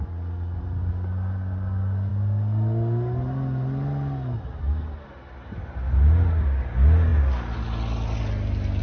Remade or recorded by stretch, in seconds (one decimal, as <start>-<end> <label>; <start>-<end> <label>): 0.0-8.8 recorded